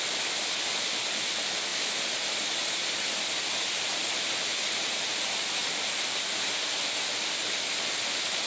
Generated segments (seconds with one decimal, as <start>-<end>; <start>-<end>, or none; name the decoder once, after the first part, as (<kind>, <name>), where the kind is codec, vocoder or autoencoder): none